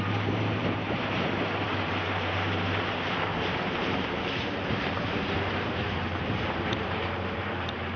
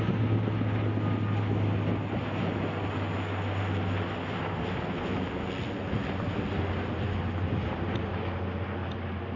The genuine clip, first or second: second